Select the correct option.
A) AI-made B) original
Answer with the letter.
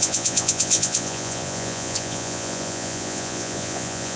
A